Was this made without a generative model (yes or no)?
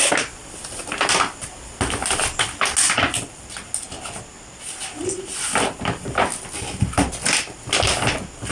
yes